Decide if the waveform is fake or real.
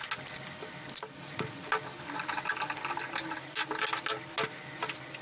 real